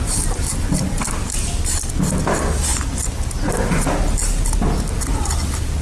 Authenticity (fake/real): real